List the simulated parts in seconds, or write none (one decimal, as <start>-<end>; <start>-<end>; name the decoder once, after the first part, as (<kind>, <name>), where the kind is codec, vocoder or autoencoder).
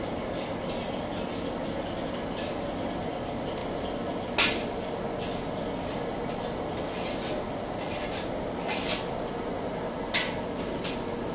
none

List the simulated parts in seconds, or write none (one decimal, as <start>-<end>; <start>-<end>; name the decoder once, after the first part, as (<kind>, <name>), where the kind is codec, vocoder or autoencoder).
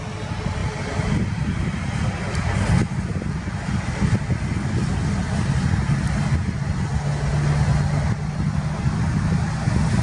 none